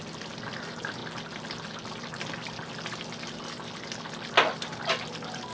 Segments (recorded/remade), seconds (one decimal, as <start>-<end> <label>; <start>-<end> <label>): 0.0-5.5 recorded